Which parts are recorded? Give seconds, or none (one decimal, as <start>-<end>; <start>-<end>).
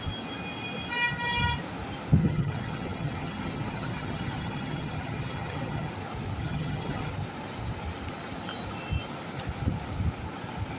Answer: 0.0-2.2; 5.9-6.4; 7.1-10.8